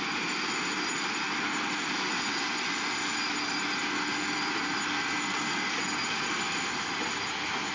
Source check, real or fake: real